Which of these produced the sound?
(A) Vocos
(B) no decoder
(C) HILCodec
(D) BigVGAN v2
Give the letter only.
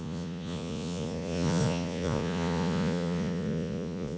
A